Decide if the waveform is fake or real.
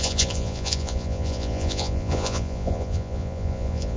fake